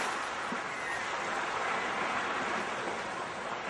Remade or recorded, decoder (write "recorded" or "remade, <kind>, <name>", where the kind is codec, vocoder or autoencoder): recorded